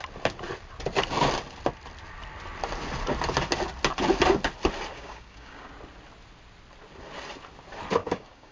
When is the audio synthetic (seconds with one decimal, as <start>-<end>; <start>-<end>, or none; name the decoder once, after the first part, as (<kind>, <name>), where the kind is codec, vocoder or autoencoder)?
4.9-5.7 (codec, DAC); 8.0-8.5